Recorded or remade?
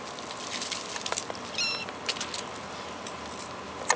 recorded